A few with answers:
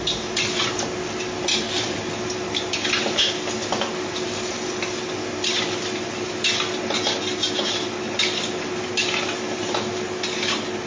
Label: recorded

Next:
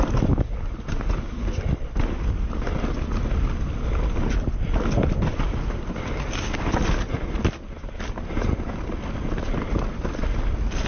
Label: recorded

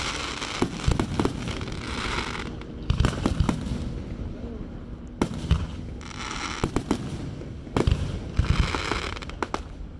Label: recorded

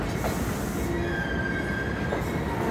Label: recorded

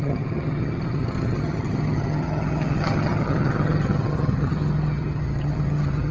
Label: remade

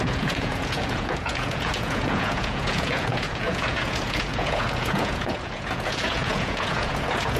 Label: remade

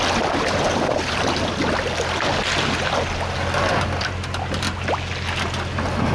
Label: recorded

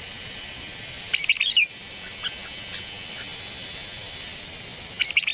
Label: recorded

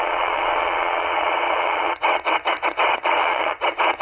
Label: remade